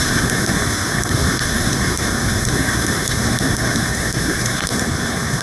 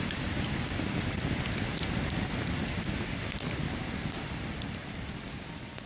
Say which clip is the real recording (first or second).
second